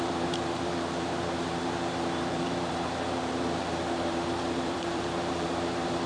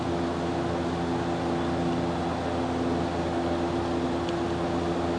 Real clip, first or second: second